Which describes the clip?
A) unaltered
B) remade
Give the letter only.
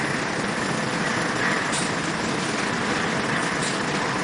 A